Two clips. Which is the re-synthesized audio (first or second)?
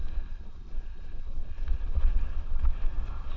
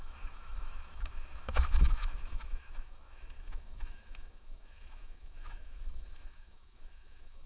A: second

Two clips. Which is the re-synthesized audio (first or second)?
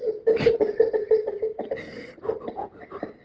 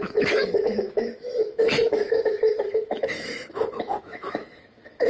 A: second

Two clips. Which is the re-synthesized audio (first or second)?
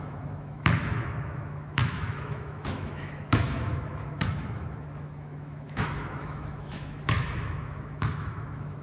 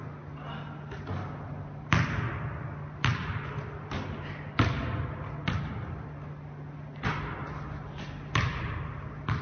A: first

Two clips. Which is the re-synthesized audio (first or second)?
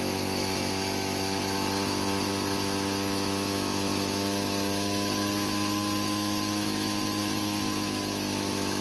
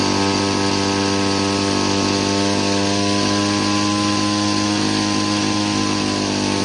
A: first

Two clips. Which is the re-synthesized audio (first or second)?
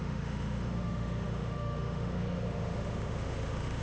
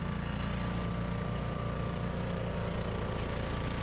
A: first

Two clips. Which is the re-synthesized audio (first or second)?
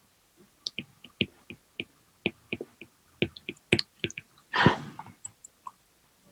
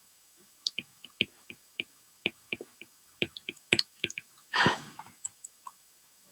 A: second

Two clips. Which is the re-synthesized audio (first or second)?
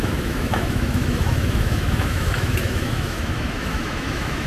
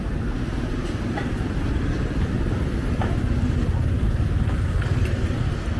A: first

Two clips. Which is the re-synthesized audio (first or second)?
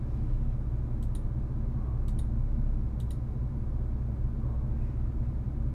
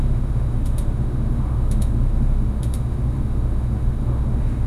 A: second